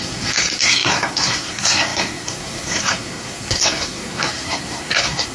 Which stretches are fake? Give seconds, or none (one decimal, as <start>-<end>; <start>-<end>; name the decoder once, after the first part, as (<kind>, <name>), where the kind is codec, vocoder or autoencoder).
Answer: 0.0-5.3 (codec, SNAC)